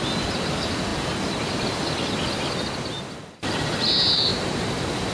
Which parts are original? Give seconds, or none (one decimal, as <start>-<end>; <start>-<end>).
0.0-4.3